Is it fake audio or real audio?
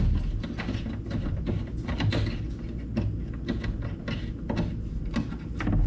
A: real